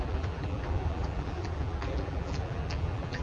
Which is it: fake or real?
fake